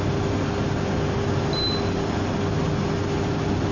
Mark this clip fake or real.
real